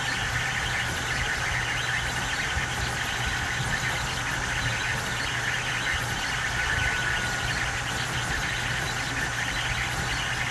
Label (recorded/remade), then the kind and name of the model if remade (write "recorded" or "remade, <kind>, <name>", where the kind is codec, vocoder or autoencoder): recorded